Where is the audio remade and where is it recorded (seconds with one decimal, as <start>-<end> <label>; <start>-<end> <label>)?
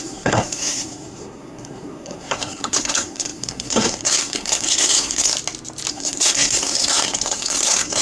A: 0.0-5.3 remade; 5.3-5.9 recorded; 5.9-8.0 remade